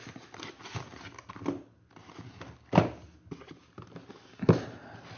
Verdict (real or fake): real